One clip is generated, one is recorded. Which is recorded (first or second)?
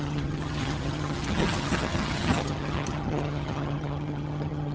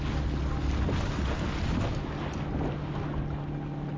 second